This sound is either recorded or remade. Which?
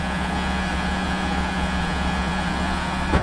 remade